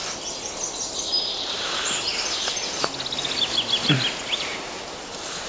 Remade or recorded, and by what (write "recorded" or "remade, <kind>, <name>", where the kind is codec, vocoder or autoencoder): recorded